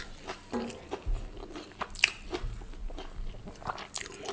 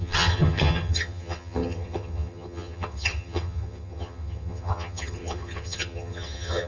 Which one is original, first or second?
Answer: first